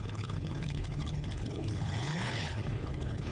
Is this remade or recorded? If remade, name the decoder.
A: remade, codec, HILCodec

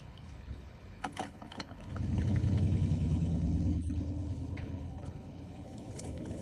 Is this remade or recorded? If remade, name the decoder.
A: remade, codec, HILCodec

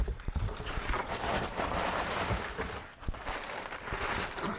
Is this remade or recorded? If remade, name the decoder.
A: recorded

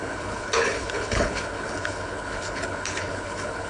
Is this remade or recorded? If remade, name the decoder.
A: remade, codec, HILCodec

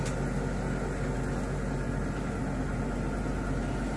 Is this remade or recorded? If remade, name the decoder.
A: recorded